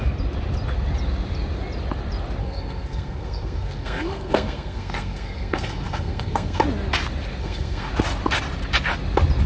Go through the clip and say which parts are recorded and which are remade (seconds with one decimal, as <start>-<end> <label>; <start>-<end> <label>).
0.0-2.4 recorded; 2.4-6.6 remade; 6.6-7.4 recorded; 7.4-7.9 remade; 7.9-9.5 recorded